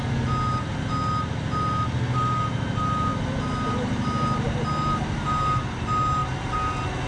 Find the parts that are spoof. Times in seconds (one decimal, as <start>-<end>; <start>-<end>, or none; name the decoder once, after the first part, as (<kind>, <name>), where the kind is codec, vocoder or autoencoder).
none